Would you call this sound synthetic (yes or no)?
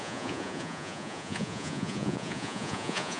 yes